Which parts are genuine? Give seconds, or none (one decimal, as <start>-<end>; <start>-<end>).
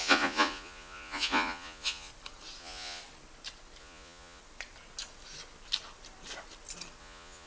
2.1-2.6; 3.0-3.8; 4.4-7.0